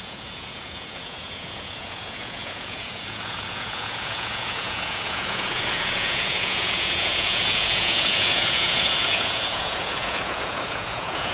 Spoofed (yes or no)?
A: yes